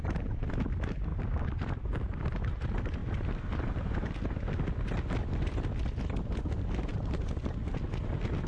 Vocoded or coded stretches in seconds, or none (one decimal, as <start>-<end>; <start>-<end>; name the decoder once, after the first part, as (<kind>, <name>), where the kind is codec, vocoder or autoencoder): 1.1-2.2 (vocoder, BigVGAN v2); 3.0-4.4